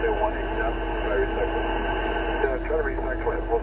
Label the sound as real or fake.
real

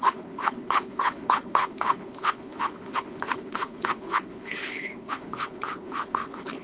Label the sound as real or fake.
fake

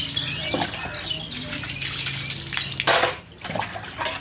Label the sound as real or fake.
real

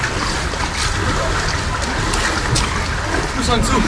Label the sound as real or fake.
real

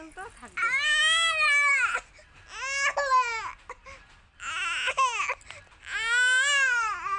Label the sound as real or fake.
real